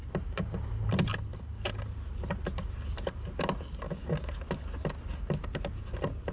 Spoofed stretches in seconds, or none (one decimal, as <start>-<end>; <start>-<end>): none